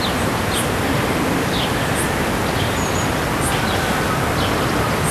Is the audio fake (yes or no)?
no